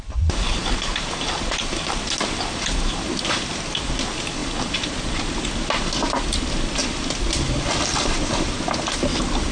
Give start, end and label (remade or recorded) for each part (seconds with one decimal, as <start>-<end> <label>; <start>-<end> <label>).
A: 0.0-9.5 recorded